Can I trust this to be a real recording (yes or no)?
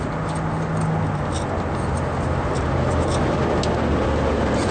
yes